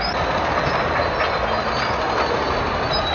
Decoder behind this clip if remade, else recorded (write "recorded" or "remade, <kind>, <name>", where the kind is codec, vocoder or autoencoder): recorded